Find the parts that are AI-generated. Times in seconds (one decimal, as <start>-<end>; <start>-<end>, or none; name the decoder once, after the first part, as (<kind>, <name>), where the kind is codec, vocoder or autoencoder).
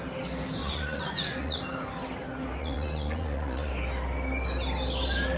0.6-1.6 (vocoder, Vocos); 2.6-3.7